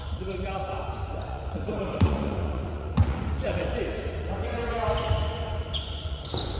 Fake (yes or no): yes